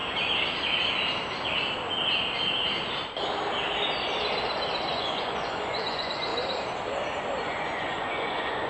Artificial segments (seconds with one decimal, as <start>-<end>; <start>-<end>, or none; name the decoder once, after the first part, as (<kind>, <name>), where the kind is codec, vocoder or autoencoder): 4.9-6.3 (vocoder, Vocos); 7.4-8.7